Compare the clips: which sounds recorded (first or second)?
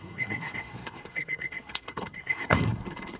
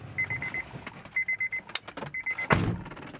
second